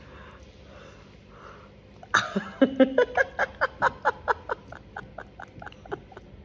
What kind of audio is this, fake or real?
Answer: real